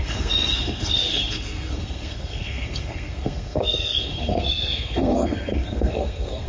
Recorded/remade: remade